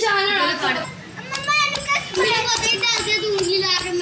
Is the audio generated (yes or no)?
no